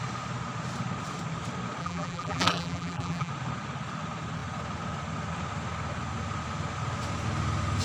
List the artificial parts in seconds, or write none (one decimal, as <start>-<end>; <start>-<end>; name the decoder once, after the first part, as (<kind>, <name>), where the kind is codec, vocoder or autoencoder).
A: 1.8-3.3 (vocoder, BigVGAN v2)